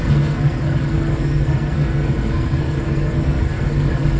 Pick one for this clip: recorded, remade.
remade